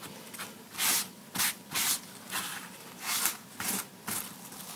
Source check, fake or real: real